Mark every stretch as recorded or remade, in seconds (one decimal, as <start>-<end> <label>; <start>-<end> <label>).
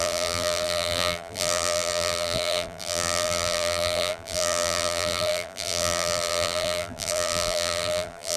0.0-8.4 remade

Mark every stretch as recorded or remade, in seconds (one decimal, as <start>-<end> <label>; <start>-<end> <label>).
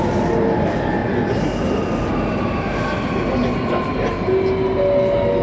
0.0-5.4 recorded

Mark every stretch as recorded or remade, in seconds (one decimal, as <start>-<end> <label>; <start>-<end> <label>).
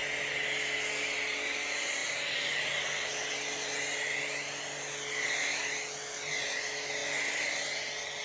0.0-8.2 recorded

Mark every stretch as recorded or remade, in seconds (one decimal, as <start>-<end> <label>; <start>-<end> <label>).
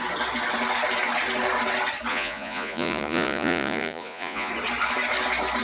0.0-2.1 recorded; 2.1-4.5 remade; 4.5-5.6 recorded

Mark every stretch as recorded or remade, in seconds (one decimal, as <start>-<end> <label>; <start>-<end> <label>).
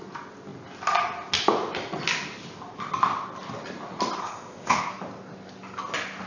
0.0-4.2 recorded; 4.2-4.9 remade; 4.9-6.3 recorded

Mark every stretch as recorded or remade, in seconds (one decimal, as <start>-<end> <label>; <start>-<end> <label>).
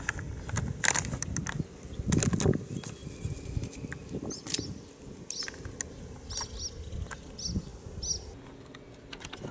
0.0-9.5 recorded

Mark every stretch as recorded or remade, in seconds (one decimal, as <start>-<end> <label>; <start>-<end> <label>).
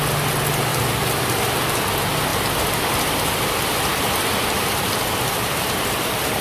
0.0-0.7 recorded; 0.7-1.4 remade; 1.4-2.3 recorded; 2.3-6.4 remade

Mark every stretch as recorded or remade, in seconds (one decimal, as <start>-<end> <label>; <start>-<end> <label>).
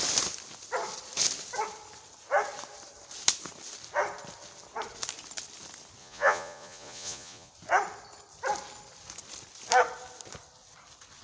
0.0-6.0 recorded; 6.0-7.5 remade; 7.5-11.2 recorded